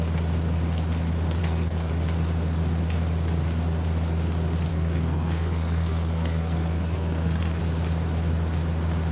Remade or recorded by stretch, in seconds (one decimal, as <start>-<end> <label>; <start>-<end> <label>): 0.0-1.4 recorded; 1.4-1.9 remade; 1.9-4.7 recorded; 4.7-7.6 remade; 7.6-9.1 recorded